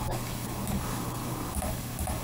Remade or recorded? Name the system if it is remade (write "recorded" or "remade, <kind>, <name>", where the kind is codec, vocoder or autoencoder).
remade, codec, DAC